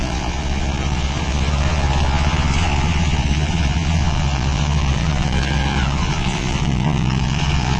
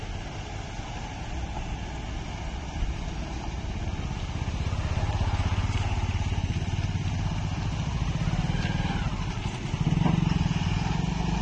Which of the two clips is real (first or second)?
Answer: second